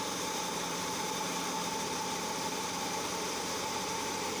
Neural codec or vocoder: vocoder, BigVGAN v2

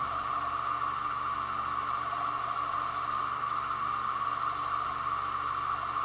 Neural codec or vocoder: none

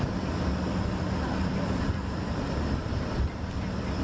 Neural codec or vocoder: vocoder, BigVGAN v2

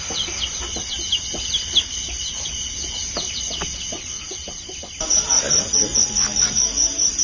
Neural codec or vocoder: none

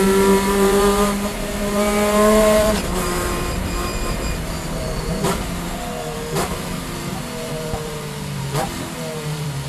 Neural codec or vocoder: vocoder, BigVGAN v2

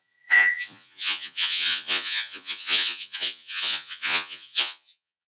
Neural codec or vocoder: vocoder, Vocos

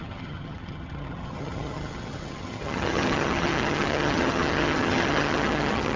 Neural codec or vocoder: vocoder, HiFi-GAN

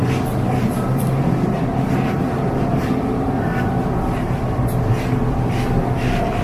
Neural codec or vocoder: none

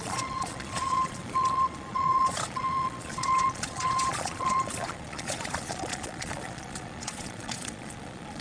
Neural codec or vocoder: vocoder, Vocos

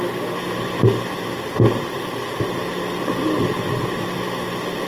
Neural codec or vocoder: none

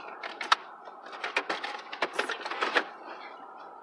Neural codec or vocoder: none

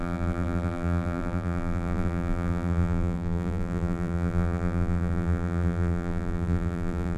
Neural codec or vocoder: vocoder, BigVGAN v2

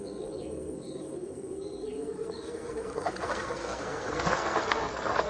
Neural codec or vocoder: codec, SNAC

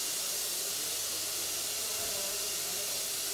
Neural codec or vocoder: none